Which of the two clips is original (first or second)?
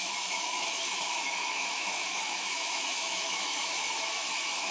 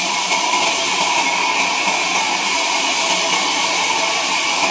second